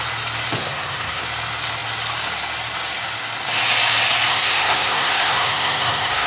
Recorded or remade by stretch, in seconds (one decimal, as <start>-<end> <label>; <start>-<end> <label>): 0.0-0.6 recorded; 0.6-1.2 remade; 1.2-4.3 recorded; 4.3-6.3 remade